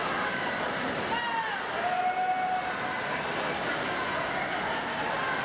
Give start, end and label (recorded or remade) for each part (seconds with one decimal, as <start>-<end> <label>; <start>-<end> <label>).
0.0-5.4 recorded